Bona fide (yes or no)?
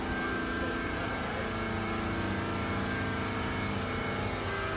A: yes